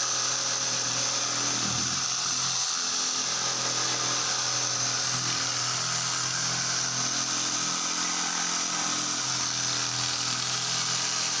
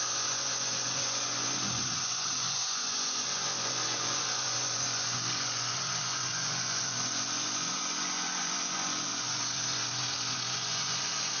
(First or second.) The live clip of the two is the first